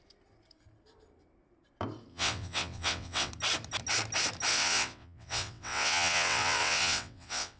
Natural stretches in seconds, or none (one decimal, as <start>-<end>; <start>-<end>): 0.0-2.1; 3.3-4.5